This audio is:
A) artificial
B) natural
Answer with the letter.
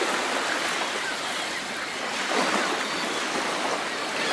B